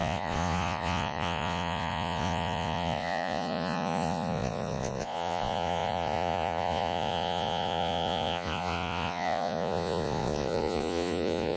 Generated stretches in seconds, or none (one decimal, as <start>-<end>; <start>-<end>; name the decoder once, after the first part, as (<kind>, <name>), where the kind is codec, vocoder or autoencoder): 0.0-11.6 (vocoder, Vocos)